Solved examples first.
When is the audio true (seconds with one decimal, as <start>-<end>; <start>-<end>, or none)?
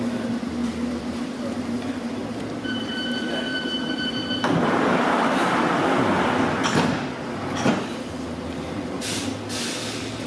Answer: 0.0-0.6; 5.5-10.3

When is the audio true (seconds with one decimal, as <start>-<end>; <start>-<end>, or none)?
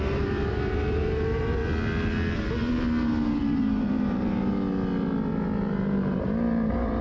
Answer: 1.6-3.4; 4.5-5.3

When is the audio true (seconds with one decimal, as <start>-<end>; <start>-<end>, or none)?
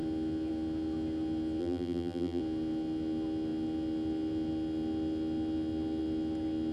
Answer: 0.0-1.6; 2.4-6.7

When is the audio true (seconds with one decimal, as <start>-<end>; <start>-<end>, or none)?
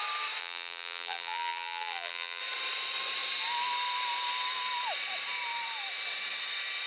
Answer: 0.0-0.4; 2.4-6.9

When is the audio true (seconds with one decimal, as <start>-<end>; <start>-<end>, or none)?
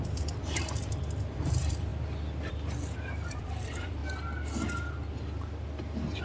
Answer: 1.9-2.5; 4.0-6.2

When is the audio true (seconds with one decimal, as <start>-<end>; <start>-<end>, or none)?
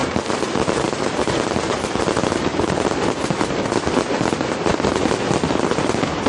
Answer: 2.0-2.5; 3.7-6.3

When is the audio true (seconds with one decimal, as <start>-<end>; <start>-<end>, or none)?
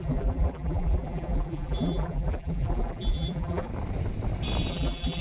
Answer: 3.7-4.7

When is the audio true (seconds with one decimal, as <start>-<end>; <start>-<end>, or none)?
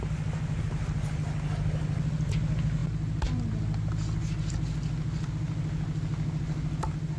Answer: 0.0-7.2